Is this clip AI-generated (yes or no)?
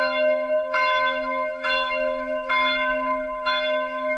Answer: yes